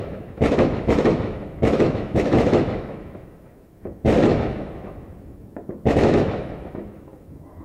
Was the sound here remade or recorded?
remade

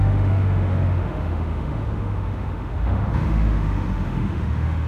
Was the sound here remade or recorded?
remade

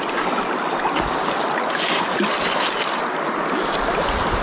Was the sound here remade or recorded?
recorded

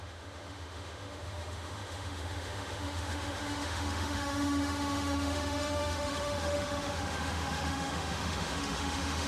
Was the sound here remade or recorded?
remade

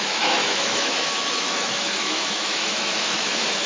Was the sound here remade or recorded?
remade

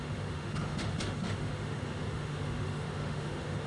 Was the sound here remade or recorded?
remade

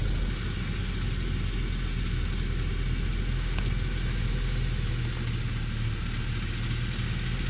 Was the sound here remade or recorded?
recorded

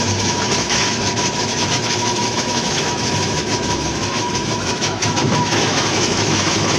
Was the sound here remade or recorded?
remade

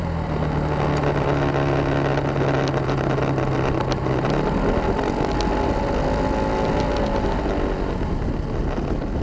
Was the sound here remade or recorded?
recorded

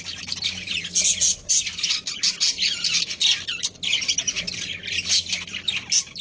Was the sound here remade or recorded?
recorded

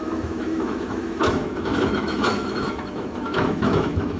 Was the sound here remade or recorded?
remade